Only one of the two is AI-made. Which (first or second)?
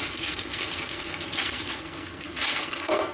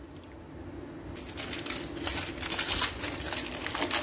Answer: first